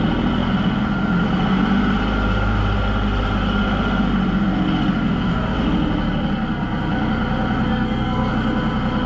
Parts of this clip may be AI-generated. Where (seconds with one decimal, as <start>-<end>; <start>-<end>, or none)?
7.7-8.3